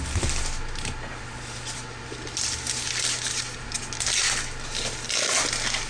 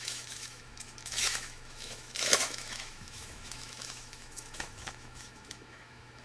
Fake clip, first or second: second